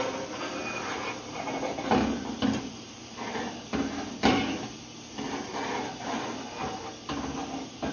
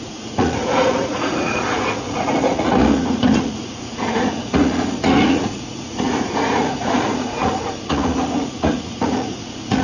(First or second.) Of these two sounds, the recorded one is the first